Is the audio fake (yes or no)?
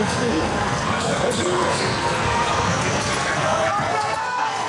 yes